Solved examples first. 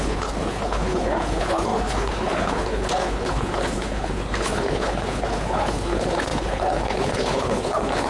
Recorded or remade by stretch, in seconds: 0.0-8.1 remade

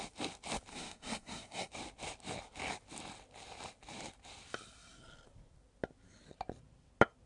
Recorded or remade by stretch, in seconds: 0.0-0.7 recorded; 0.7-1.7 remade; 1.7-7.3 recorded

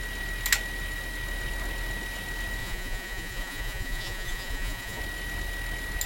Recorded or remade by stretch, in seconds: 0.0-2.6 recorded; 2.6-5.0 remade; 5.0-6.1 recorded